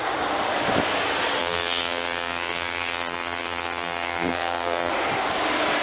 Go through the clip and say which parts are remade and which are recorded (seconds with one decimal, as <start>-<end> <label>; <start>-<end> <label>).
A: 0.0-1.4 recorded; 1.4-4.9 remade; 4.9-5.8 recorded